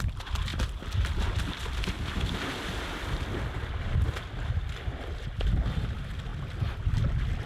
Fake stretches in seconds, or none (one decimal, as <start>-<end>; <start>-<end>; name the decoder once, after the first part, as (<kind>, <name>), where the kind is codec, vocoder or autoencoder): none